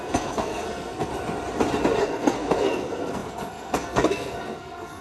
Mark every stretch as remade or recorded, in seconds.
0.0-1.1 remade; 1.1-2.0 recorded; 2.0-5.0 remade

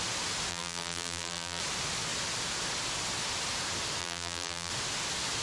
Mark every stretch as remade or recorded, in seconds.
0.0-0.5 recorded; 0.5-1.6 remade; 1.6-4.0 recorded; 4.0-4.7 remade; 4.7-5.4 recorded

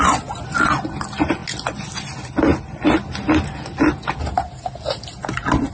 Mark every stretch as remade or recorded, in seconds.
0.0-5.7 recorded

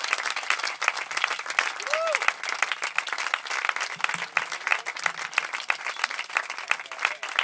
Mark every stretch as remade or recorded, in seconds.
0.0-7.4 recorded

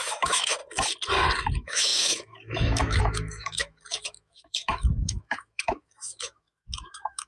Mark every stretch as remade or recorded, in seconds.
0.0-0.6 remade; 0.6-1.5 recorded; 1.5-7.3 remade

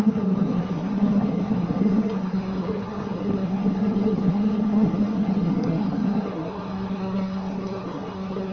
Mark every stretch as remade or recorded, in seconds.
0.0-8.5 remade

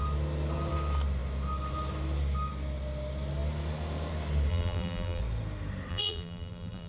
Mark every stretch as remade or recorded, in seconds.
0.0-4.5 recorded; 4.5-5.2 remade; 5.2-5.9 recorded; 5.9-6.9 remade

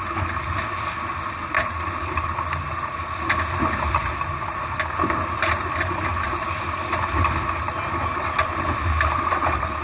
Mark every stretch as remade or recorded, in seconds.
0.0-9.8 recorded